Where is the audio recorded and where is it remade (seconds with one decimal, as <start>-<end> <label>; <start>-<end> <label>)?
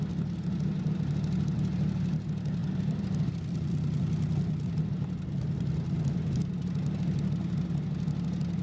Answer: 0.0-2.6 recorded; 2.6-3.3 remade; 3.3-8.6 recorded